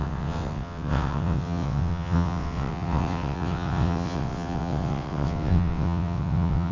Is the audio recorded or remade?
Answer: remade